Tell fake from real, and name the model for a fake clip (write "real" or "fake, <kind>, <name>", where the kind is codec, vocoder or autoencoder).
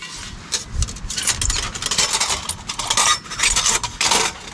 real